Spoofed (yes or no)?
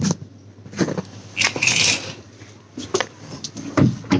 no